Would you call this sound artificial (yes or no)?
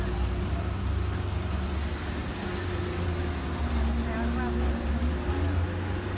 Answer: no